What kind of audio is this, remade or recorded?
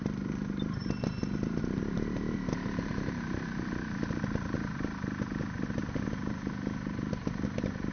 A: recorded